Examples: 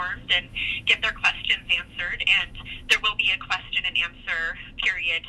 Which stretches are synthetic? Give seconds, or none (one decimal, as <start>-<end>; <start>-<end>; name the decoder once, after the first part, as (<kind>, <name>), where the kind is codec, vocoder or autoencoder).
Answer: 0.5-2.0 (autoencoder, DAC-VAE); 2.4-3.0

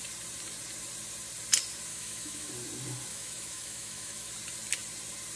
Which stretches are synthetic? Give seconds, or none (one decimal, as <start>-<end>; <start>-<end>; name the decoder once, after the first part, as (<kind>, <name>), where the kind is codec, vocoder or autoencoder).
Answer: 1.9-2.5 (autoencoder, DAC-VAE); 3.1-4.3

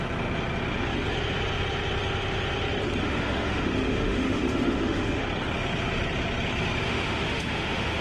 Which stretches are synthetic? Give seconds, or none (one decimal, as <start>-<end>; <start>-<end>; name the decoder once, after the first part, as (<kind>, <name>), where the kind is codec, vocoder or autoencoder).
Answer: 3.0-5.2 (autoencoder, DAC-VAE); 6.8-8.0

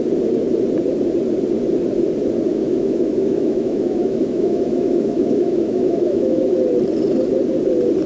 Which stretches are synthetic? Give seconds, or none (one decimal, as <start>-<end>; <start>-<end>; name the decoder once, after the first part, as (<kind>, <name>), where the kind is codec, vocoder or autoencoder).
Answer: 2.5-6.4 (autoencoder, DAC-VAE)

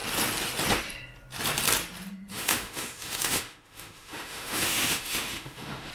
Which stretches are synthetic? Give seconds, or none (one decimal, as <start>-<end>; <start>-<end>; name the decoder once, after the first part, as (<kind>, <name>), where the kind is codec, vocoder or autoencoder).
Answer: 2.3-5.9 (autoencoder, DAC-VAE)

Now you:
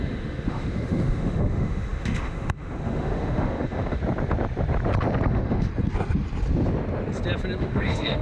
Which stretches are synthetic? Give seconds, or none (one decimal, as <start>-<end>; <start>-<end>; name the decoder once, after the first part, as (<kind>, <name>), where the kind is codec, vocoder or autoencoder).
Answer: 0.0-4.0 (autoencoder, DAC-VAE); 5.3-5.7; 7.6-8.2

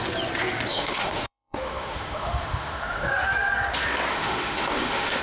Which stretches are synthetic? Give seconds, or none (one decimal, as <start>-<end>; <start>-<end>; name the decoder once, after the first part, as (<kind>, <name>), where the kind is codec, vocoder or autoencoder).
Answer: 0.7-3.1 (autoencoder, DAC-VAE); 4.1-5.2